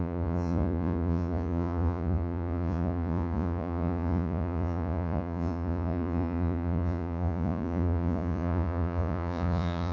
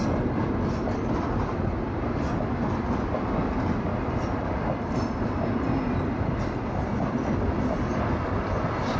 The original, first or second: second